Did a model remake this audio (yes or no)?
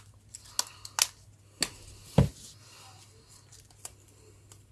no